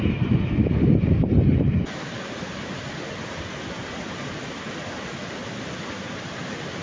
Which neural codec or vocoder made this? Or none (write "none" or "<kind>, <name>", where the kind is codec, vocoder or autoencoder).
none